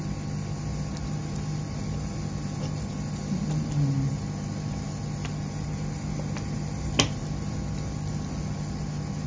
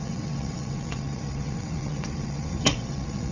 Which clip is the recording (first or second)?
first